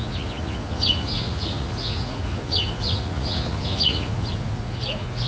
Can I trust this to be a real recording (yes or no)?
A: no